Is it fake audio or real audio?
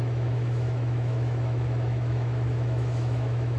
fake